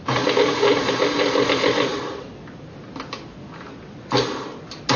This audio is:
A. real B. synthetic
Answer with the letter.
A